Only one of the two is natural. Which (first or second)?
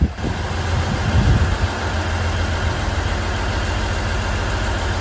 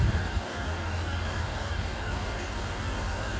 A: first